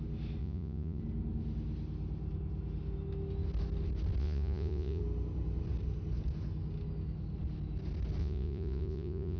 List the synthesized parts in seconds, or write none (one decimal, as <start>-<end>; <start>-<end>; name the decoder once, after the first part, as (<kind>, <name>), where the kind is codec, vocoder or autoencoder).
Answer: 0.4-1.0 (vocoder, Vocos); 4.2-5.0; 8.2-9.4